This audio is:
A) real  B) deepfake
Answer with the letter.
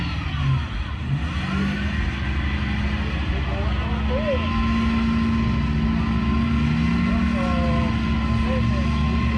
A